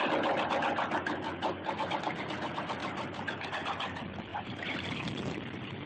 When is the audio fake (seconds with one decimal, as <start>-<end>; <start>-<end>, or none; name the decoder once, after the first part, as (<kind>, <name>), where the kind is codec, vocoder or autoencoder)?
2.8-3.5 (vocoder, BigVGAN v2); 4.3-4.9